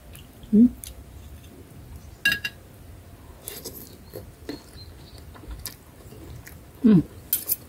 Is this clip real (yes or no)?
yes